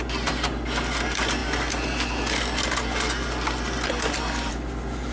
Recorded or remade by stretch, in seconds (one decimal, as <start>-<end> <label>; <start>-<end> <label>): 0.0-5.1 recorded